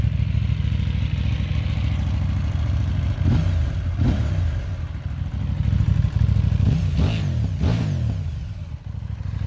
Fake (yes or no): no